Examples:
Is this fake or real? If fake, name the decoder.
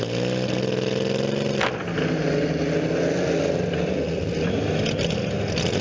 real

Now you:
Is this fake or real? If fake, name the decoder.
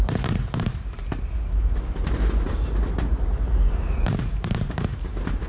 fake, vocoder, BigVGAN v2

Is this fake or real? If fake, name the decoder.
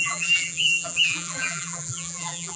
fake, vocoder, BigVGAN v2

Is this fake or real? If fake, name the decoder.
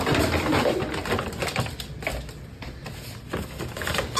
real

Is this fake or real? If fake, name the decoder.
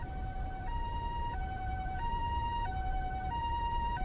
fake, vocoder, BigVGAN v2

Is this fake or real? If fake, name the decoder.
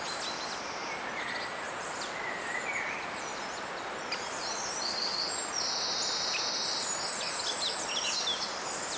real